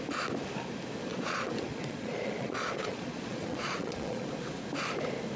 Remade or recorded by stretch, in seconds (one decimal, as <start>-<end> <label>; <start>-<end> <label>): 0.0-1.1 recorded; 1.1-4.3 remade; 4.3-5.4 recorded